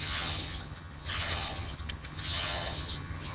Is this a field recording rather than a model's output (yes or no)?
no